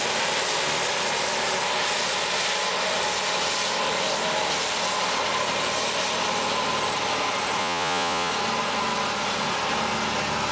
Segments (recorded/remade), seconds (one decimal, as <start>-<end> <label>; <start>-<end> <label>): 0.0-7.6 recorded; 7.6-8.3 remade; 8.3-10.5 recorded